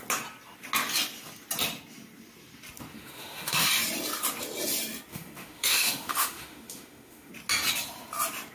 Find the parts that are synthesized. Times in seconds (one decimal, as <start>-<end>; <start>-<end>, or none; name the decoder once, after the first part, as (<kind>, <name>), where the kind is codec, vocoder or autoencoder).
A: 2.9-3.7 (autoencoder, DAC-VAE); 5.1-7.3

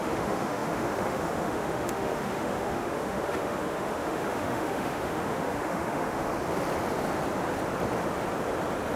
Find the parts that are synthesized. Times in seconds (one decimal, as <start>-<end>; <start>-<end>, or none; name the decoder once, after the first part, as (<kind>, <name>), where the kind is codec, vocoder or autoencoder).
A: 0.0-6.3 (autoencoder, DAC-VAE)

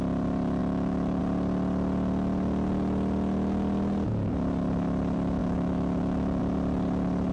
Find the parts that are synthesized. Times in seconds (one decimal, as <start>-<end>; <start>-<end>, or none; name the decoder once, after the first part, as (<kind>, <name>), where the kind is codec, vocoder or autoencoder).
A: 0.6-1.2 (autoencoder, DAC-VAE); 5.4-6.4

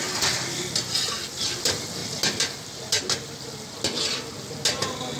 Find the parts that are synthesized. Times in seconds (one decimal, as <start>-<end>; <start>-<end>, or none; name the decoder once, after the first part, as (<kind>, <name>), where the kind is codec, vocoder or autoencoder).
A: none